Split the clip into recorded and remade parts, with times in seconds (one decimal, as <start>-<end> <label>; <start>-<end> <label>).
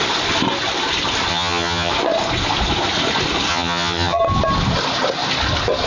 0.0-1.3 recorded; 1.3-1.9 remade; 1.9-3.5 recorded; 3.5-4.2 remade; 4.2-5.9 recorded